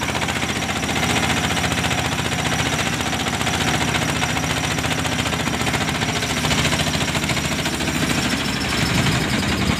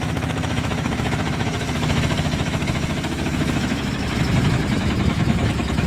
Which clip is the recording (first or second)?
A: first